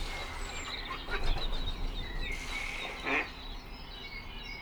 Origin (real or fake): real